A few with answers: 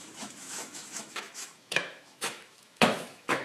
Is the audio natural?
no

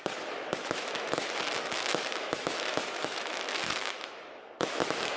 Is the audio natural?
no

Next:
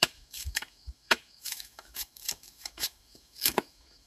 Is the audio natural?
no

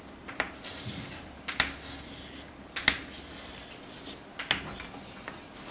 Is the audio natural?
yes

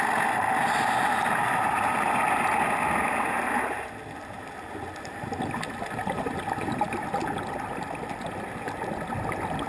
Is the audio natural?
yes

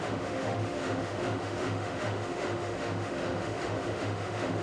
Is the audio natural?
no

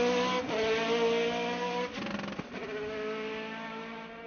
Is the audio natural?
yes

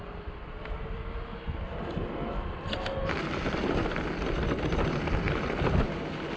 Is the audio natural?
yes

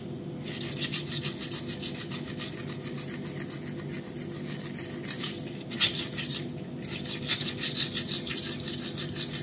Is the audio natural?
yes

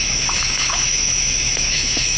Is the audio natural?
no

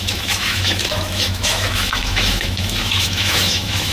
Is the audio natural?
no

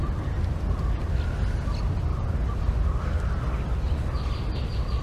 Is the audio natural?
yes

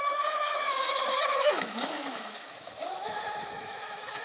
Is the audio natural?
no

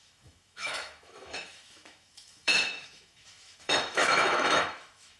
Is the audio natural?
no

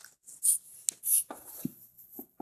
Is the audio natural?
yes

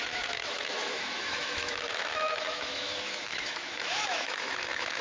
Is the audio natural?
no